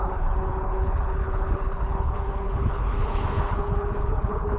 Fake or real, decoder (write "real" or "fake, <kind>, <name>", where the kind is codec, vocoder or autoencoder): fake, codec, HILCodec